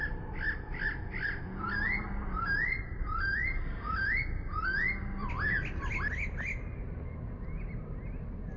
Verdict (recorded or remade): recorded